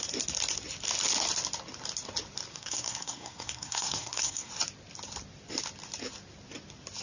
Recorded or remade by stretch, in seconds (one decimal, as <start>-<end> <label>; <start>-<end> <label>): 0.0-2.5 recorded; 2.5-4.5 remade; 4.5-7.0 recorded